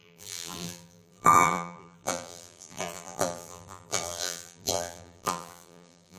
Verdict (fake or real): fake